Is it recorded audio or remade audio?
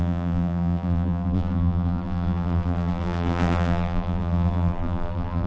remade